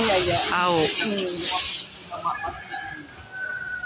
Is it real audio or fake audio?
real